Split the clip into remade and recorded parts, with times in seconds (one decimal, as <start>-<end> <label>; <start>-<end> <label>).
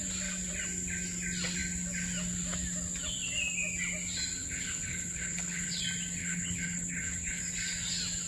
0.0-4.4 recorded; 4.4-5.8 remade; 5.8-6.2 recorded; 6.2-7.4 remade; 7.4-8.3 recorded